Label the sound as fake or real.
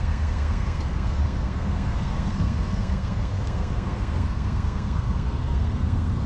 fake